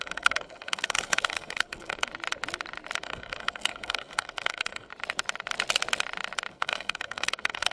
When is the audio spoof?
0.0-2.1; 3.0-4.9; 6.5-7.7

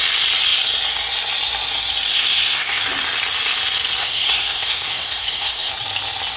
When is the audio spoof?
2.1-2.8; 4.0-5.7

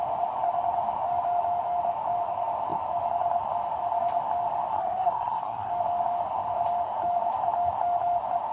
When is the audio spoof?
4.7-5.7

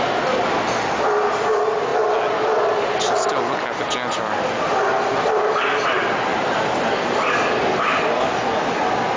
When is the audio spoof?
6.3-9.2